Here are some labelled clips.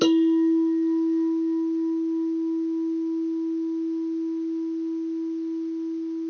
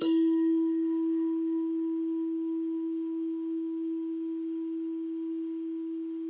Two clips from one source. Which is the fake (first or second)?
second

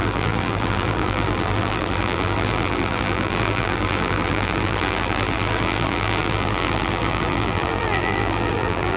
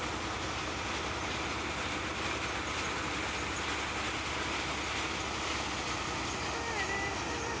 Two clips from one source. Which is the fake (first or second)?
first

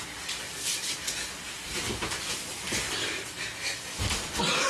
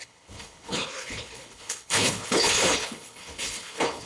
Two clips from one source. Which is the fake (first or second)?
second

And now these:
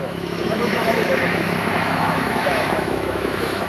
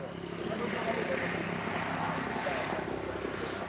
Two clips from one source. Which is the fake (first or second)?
first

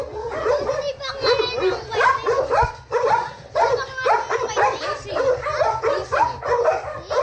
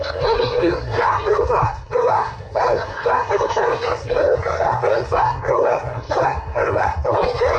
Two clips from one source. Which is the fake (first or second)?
second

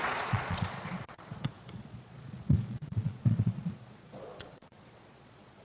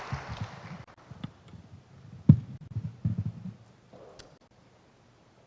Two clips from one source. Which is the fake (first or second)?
first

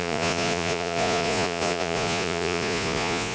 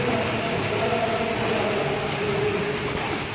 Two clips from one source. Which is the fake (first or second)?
first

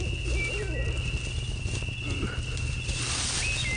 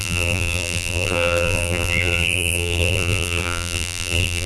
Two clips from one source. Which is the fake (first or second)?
second